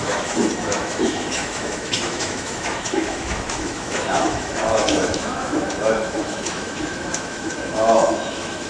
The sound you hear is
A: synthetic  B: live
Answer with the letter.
A